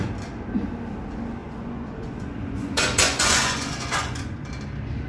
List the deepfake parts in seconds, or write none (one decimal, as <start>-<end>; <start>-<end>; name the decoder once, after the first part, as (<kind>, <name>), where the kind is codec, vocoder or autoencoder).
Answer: 1.4-4.5 (vocoder, Vocos)